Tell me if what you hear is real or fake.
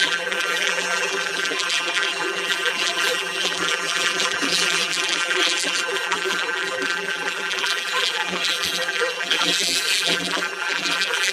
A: fake